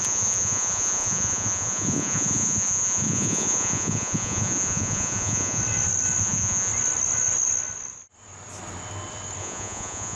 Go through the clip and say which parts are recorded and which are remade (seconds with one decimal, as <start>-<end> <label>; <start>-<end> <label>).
0.0-5.6 remade; 5.6-6.2 recorded; 6.2-6.7 remade; 6.7-9.4 recorded; 9.4-10.2 remade